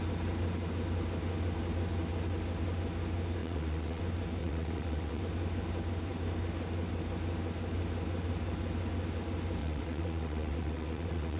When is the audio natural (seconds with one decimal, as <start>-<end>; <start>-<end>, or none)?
0.0-3.4; 4.0-4.4; 5.2-9.6